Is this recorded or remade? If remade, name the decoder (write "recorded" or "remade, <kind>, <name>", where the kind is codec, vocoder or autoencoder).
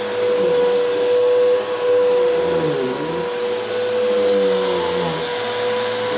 recorded